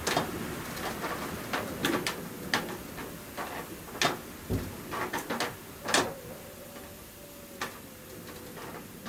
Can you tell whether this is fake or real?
real